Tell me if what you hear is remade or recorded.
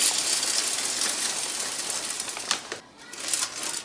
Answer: recorded